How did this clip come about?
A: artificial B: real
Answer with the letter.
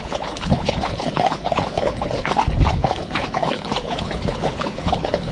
A